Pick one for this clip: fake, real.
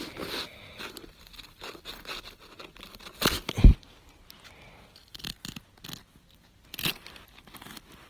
real